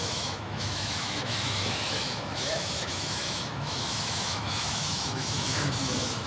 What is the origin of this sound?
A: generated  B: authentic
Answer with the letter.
A